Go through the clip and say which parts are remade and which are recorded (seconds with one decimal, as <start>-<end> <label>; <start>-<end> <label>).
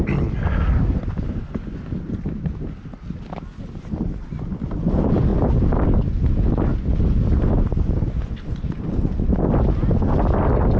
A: 0.0-10.8 recorded